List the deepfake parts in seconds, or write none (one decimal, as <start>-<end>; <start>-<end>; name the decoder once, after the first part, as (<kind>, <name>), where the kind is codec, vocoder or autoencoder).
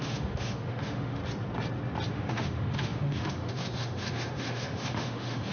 0.0-1.2 (autoencoder, DAC-VAE); 2.1-5.5